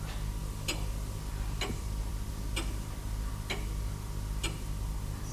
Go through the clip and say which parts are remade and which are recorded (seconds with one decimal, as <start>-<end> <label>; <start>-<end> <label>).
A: 0.0-0.4 recorded; 0.4-1.3 remade; 1.3-5.3 recorded